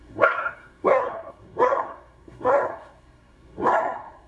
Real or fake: fake